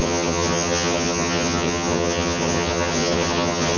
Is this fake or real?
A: fake